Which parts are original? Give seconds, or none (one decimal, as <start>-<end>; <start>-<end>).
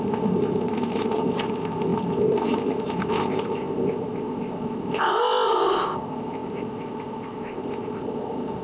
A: none